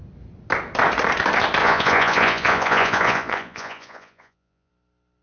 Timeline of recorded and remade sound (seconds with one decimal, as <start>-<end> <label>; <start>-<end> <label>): 0.0-1.6 recorded; 1.6-4.7 remade; 4.7-5.2 recorded